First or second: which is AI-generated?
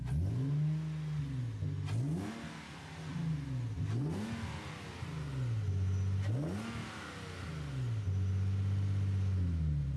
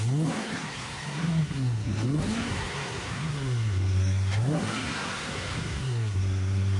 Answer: second